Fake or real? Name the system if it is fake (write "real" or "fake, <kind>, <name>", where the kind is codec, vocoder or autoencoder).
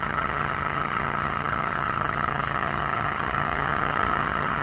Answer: fake, vocoder, HiFi-GAN